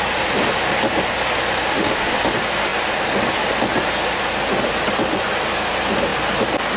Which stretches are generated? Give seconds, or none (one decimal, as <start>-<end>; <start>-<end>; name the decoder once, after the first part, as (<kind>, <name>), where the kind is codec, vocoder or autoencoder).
1.7-2.3 (autoencoder, DAC-VAE)